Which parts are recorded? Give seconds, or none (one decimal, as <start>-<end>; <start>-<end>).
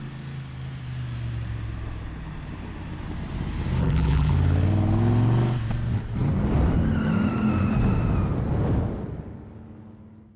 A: 0.0-3.8; 4.3-10.4